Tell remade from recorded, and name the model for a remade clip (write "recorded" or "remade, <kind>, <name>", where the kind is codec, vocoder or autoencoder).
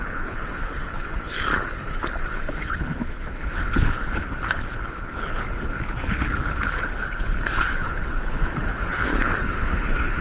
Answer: remade, codec, HILCodec